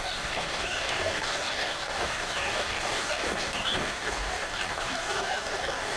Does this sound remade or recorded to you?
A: remade